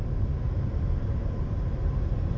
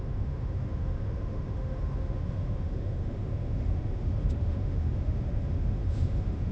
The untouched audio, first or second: first